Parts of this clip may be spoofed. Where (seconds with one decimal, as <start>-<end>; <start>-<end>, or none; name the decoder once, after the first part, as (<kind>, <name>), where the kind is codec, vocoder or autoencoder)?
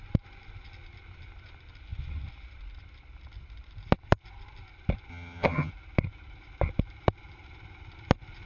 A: 5.1-5.7 (vocoder, HiFi-GAN)